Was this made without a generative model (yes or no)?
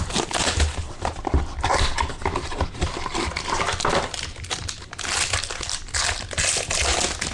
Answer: yes